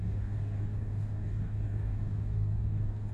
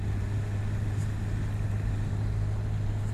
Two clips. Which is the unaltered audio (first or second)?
second